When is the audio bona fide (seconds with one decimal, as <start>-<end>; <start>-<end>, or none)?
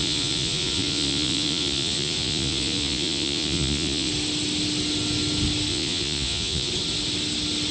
4.1-5.7; 6.7-7.7